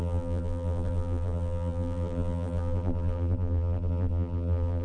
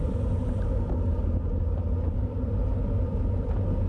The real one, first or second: second